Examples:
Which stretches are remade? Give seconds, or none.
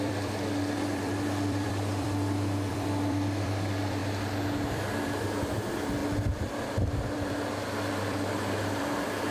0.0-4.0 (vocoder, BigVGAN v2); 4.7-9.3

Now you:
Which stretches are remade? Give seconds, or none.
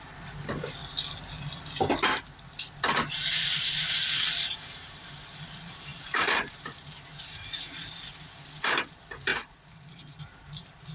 0.0-0.8 (vocoder, BigVGAN v2); 3.1-10.9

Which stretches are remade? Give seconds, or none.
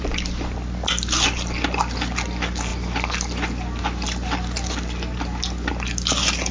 none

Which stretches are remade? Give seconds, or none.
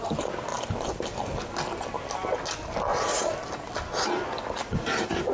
0.5-2.3 (vocoder, BigVGAN v2); 2.9-3.7